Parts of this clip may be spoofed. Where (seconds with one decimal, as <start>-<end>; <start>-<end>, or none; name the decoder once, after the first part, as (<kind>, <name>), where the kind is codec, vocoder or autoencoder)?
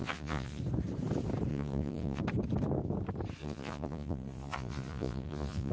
0.0-0.6 (vocoder, Vocos); 1.5-2.2; 3.4-5.7